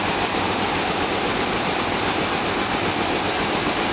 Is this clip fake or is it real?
fake